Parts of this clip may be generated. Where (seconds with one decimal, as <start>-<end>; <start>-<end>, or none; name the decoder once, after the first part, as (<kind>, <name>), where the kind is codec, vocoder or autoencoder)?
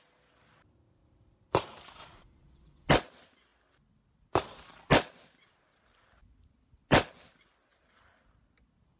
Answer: 2.0-2.9 (vocoder, Vocos)